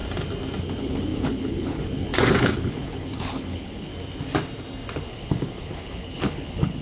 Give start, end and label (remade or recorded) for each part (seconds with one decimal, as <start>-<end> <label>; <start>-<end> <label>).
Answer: 0.0-0.6 recorded; 0.6-3.9 remade; 3.9-5.1 recorded; 5.1-6.8 remade